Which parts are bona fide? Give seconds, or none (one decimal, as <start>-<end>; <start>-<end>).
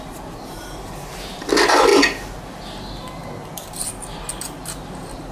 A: 0.0-5.3